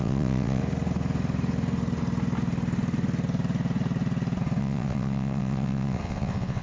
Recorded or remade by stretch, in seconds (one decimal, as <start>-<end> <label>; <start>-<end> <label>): 0.0-0.6 remade; 0.6-4.6 recorded; 4.6-6.6 remade